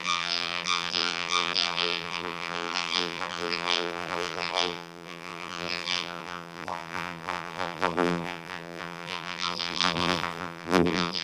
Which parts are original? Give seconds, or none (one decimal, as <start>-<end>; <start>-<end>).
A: none